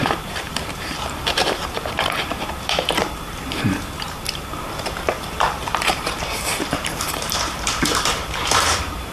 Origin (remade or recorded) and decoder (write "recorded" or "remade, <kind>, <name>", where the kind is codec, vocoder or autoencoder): remade, vocoder, BigVGAN v2